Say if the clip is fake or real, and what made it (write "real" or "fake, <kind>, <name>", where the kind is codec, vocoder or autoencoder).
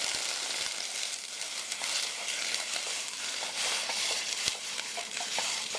fake, vocoder, BigVGAN v2